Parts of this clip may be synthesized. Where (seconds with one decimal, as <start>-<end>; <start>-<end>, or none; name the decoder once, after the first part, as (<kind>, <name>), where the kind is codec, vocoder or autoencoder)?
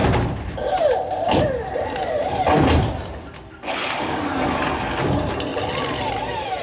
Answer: none